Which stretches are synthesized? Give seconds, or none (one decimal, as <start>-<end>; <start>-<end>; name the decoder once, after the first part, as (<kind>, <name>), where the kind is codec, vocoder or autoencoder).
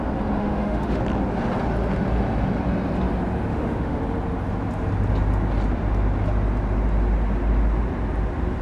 0.4-1.0 (autoencoder, DAC-VAE); 3.5-4.0